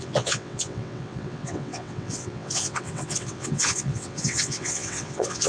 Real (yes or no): no